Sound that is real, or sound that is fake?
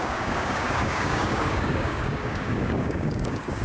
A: fake